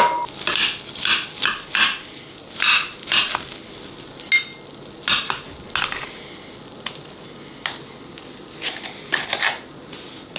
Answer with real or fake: real